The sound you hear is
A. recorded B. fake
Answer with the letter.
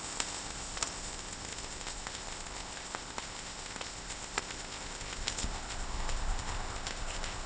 B